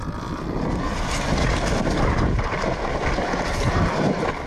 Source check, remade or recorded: recorded